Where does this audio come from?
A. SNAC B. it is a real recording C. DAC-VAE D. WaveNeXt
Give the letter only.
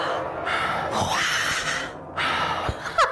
B